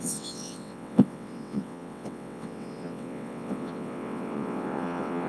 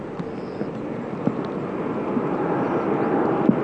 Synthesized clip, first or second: first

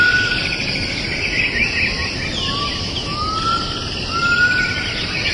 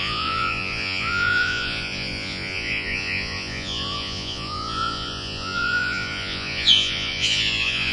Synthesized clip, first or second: second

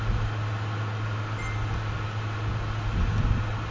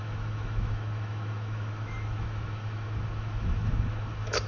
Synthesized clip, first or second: second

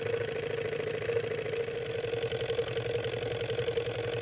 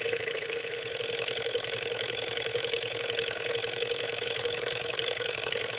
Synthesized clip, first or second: second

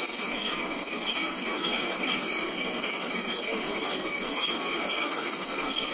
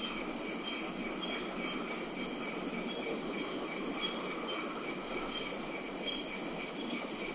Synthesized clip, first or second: first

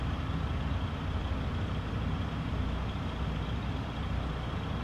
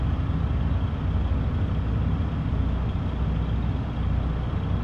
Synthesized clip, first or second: first